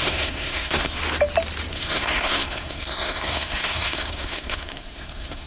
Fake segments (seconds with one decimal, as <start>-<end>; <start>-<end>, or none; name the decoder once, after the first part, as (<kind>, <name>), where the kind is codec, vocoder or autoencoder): 0.0-1.0 (codec, SNAC); 1.7-5.5